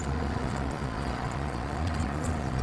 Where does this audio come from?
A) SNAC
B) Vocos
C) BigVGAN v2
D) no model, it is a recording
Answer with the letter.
B